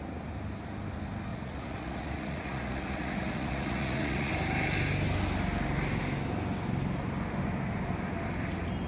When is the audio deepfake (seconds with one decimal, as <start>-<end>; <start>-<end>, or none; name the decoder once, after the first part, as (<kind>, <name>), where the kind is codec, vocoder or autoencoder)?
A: 1.3-4.3 (vocoder, Vocos)